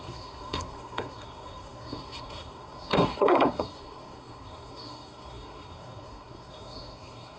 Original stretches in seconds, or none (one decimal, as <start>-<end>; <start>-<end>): none